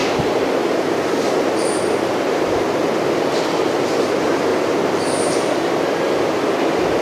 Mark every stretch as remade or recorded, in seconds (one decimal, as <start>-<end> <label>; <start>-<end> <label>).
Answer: 0.0-7.0 recorded